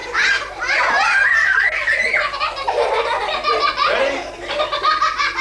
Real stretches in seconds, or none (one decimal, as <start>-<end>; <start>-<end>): 0.0-5.4

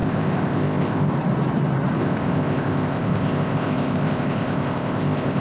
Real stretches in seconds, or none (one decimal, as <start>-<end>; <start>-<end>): 1.1-2.0